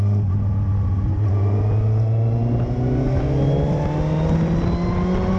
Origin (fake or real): real